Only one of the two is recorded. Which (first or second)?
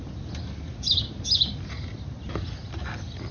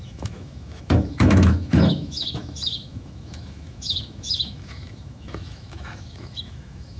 first